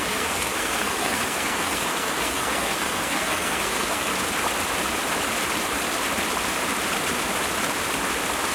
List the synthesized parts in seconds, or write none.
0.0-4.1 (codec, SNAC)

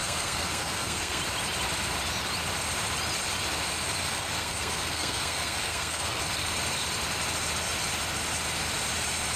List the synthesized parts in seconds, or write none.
0.0-1.2 (codec, SNAC); 4.0-6.2

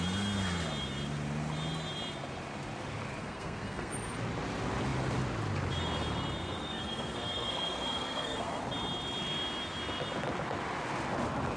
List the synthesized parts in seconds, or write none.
3.2-3.9 (codec, SNAC); 6.4-8.6